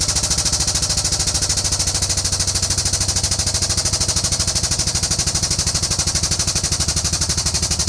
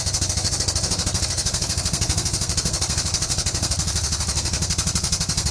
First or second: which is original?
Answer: first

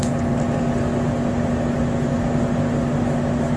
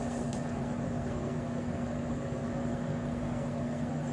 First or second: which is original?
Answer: first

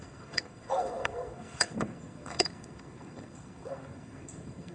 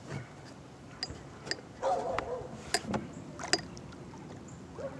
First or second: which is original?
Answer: second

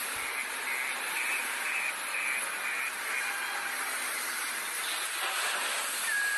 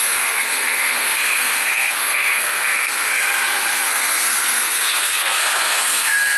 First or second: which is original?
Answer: first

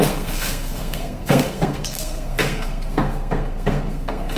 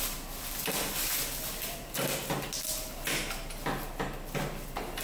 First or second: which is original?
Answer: second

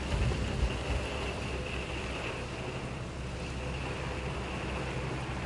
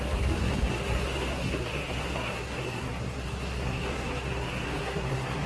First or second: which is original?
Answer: first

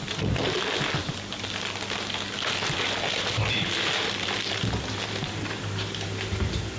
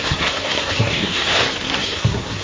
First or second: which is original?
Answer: first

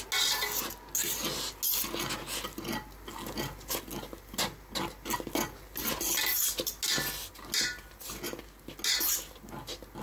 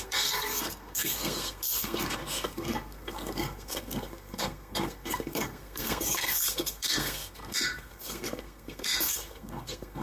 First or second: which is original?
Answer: first